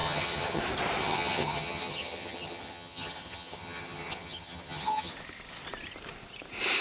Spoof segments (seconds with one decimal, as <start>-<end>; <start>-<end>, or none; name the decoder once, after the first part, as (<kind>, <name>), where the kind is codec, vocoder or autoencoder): 0.0-0.6 (vocoder, HiFi-GAN); 1.0-5.1